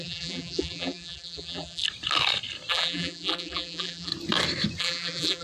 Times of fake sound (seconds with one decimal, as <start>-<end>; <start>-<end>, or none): 0.0-1.8; 2.7-4.1; 4.8-5.4